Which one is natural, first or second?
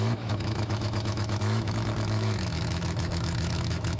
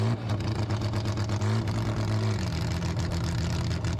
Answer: second